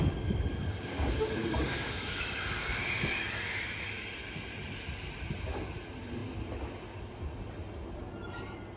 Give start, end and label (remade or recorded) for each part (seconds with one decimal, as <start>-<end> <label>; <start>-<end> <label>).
0.0-0.5 recorded; 0.5-3.1 remade; 3.1-8.8 recorded